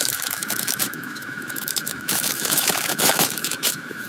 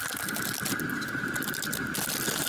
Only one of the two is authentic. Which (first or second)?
second